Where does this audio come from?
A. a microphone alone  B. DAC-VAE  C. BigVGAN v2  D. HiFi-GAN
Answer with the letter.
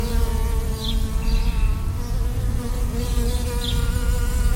A